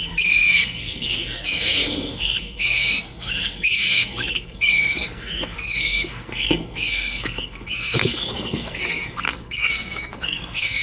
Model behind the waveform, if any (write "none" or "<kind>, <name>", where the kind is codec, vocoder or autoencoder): codec, SNAC